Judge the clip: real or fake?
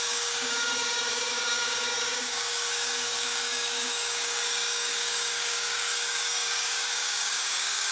fake